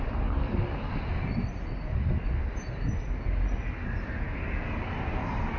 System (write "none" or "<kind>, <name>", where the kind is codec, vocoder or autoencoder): none